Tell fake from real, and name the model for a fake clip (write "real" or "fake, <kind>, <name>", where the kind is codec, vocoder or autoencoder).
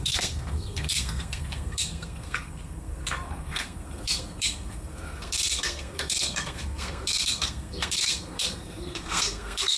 fake, codec, SNAC